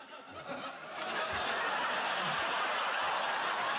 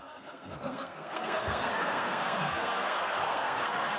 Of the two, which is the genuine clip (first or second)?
first